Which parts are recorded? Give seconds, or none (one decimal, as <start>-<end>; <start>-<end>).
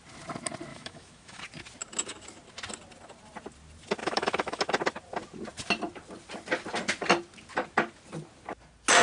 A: 0.0-0.7; 1.4-4.0; 4.6-9.0